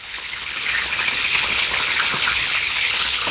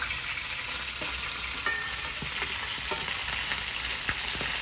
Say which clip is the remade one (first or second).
first